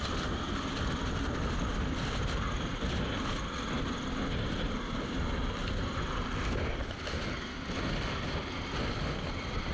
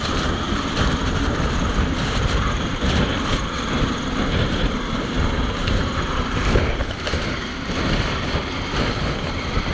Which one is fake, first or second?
second